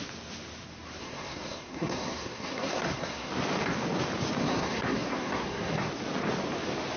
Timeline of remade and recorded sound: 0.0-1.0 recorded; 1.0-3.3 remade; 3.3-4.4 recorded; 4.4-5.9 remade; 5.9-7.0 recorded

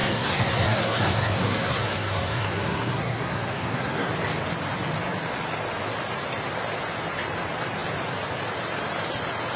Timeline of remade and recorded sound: 0.0-4.1 remade; 4.1-9.6 recorded

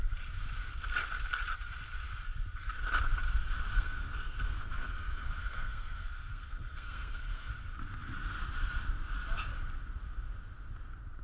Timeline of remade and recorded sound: 0.0-3.7 recorded; 3.7-7.5 remade; 7.5-11.2 recorded

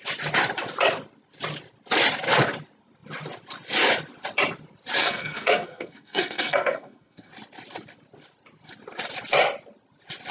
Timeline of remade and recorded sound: 0.0-5.0 recorded; 5.0-7.3 remade; 7.3-10.3 recorded

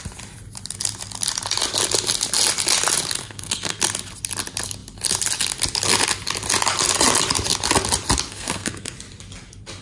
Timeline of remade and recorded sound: 0.0-3.2 recorded; 3.2-3.8 remade; 3.8-8.3 recorded; 8.3-8.9 remade; 8.9-9.8 recorded